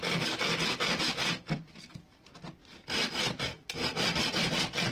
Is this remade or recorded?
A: recorded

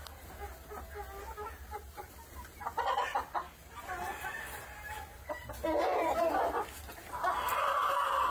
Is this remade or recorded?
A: recorded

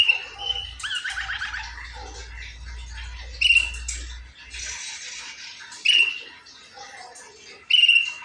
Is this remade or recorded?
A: recorded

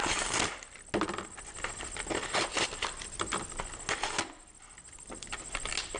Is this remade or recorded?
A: recorded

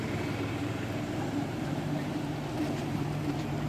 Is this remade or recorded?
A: remade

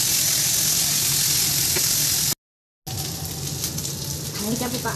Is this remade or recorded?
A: recorded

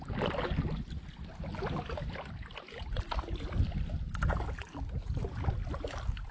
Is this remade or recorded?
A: recorded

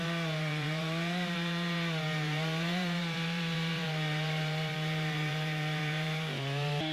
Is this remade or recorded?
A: remade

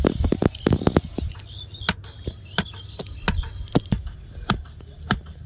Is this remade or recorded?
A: recorded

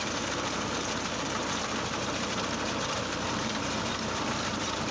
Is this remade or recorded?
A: remade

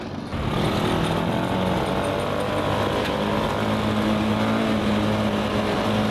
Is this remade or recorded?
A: recorded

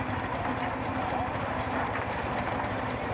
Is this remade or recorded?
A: remade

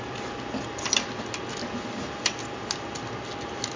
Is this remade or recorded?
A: recorded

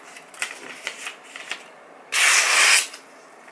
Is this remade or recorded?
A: recorded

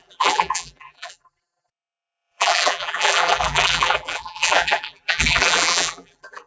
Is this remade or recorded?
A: remade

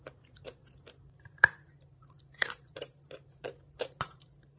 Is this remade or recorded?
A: remade